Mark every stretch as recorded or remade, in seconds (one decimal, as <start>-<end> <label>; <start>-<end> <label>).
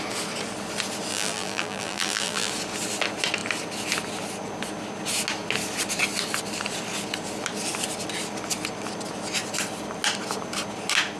0.0-1.1 recorded; 1.1-2.5 remade; 2.5-11.2 recorded